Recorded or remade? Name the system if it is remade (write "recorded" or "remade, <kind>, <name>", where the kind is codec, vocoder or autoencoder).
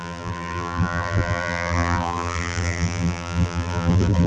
remade, vocoder, BigVGAN v2